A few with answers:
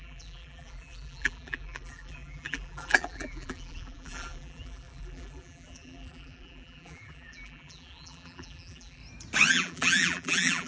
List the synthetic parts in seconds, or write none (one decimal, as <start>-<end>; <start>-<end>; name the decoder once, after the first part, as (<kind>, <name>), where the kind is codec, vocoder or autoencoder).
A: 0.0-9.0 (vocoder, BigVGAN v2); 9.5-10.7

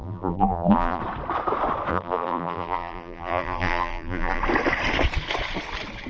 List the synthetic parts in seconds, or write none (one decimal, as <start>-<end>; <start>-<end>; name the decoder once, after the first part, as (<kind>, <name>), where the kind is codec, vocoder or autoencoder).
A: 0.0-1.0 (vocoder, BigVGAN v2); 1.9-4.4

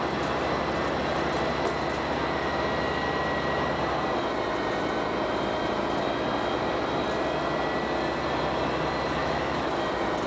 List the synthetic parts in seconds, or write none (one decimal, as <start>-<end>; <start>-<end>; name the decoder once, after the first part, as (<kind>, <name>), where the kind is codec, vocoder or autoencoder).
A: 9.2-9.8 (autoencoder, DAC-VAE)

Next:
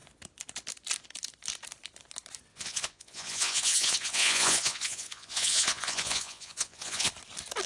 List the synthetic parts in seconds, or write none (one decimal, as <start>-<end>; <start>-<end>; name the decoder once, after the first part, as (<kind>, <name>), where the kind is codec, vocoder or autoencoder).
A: 2.5-7.1 (vocoder, Vocos)

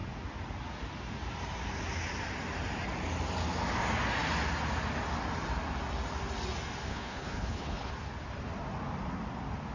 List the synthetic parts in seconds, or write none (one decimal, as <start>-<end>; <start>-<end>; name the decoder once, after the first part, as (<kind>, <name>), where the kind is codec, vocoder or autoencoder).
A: 6.9-7.9 (codec, HILCodec)

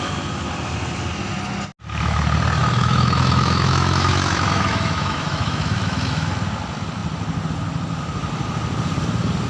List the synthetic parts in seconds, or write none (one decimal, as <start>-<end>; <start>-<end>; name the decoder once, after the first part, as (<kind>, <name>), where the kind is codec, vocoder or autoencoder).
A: 2.6-6.3 (autoencoder, DAC-VAE)

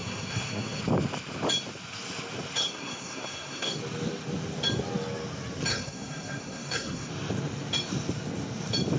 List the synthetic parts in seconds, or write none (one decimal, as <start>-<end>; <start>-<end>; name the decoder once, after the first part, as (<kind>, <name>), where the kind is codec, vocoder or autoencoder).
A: 0.0-0.8 (codec, SNAC); 2.6-3.8; 5.7-7.1